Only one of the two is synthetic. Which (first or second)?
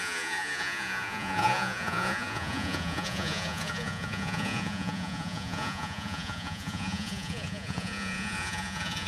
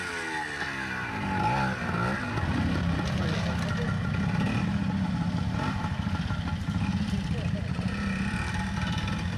first